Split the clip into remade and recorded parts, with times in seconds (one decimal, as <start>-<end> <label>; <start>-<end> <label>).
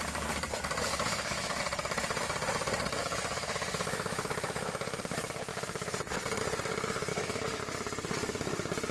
0.0-0.9 recorded; 0.9-1.6 remade; 1.6-3.0 recorded; 3.0-5.0 remade; 5.0-7.1 recorded; 7.1-7.6 remade; 7.6-8.9 recorded